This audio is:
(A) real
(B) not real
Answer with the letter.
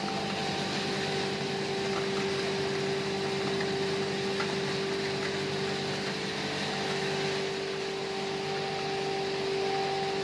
A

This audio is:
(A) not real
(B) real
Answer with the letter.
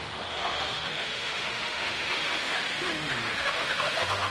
A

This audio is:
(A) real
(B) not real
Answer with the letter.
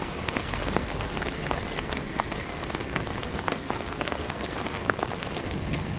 B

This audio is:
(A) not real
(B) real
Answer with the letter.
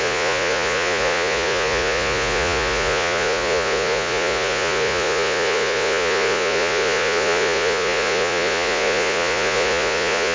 A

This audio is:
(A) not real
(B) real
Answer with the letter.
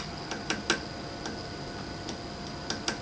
B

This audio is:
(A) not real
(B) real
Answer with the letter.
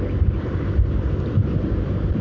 B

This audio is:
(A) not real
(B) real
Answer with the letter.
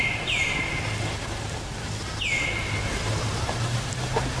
B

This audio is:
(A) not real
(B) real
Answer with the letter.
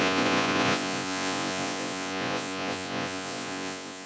A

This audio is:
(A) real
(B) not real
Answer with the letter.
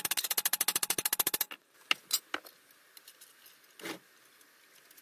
A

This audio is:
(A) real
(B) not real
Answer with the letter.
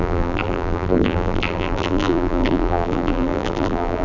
B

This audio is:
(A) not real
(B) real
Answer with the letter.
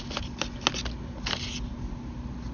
B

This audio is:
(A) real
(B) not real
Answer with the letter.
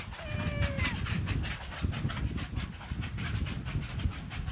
A